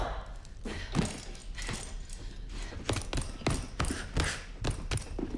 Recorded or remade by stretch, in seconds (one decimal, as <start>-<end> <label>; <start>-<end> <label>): 0.0-5.4 recorded